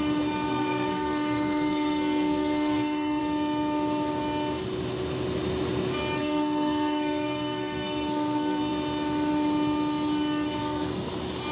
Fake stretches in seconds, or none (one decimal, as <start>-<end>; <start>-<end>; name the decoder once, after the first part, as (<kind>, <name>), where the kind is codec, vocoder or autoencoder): 0.5-3.2 (codec, SNAC); 6.2-8.7; 10.6-11.1